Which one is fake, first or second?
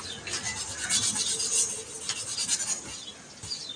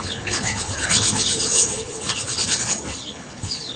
second